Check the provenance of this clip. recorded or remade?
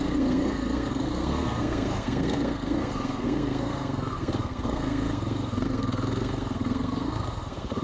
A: remade